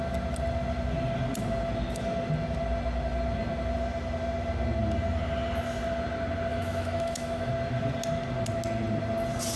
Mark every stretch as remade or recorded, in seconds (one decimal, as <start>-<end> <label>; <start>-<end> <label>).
0.0-6.5 recorded; 6.5-7.5 remade; 7.5-9.6 recorded